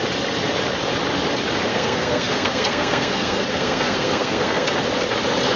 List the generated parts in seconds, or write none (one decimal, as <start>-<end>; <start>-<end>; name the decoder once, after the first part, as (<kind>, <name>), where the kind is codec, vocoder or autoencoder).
1.7-4.7 (codec, SNAC)